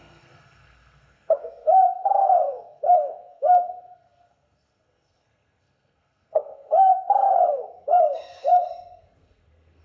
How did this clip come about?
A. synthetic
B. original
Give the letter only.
A